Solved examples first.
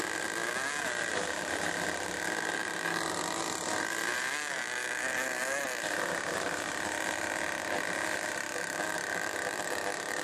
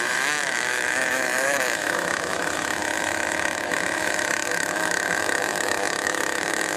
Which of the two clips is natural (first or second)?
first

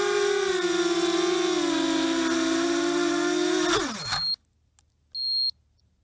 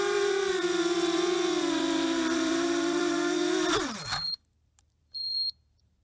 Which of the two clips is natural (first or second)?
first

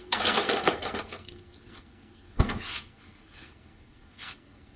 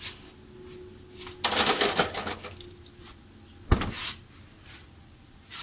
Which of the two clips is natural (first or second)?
second